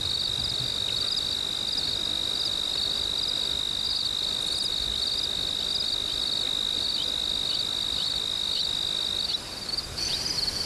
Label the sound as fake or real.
real